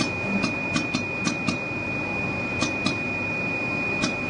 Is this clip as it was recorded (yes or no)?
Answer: yes